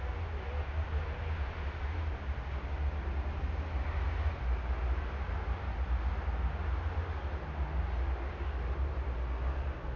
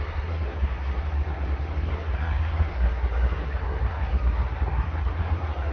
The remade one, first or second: second